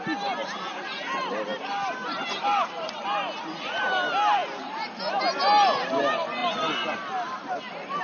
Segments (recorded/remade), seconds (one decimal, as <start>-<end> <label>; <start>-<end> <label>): 0.0-4.4 recorded; 4.4-5.2 remade; 5.2-8.0 recorded